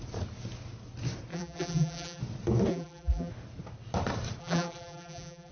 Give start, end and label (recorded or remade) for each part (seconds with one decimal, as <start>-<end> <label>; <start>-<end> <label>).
0.0-1.3 recorded; 1.3-2.2 remade; 2.2-2.7 recorded; 2.7-3.3 remade; 3.3-4.4 recorded; 4.4-5.5 remade